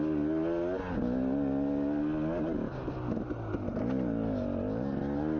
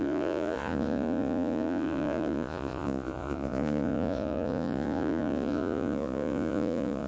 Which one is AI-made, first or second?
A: second